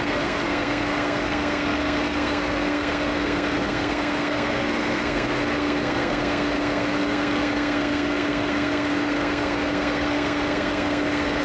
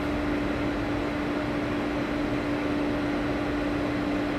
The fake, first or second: first